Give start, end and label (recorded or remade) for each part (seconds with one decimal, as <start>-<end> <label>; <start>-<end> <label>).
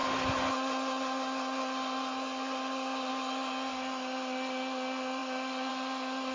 0.0-6.3 recorded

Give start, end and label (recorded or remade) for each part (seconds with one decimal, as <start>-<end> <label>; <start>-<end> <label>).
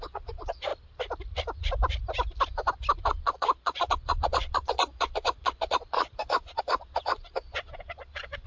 0.0-0.7 remade; 0.7-3.1 recorded; 3.1-8.5 remade